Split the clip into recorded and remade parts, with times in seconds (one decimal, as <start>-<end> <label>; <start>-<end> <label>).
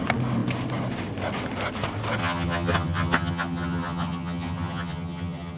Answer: 0.0-2.2 recorded; 2.2-5.6 remade